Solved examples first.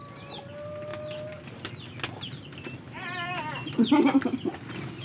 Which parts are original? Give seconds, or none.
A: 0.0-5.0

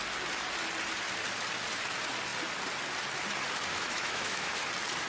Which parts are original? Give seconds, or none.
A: 0.0-3.7; 4.6-5.1